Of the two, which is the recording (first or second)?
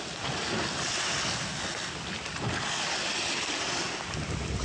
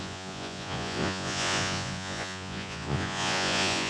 first